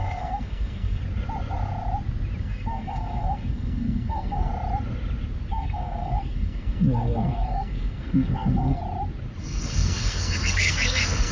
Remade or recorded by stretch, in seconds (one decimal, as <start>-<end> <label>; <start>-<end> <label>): 0.0-1.0 remade; 1.0-2.4 recorded; 2.4-4.5 remade; 4.5-5.5 recorded; 5.5-8.8 remade; 8.8-9.4 recorded; 9.4-11.3 remade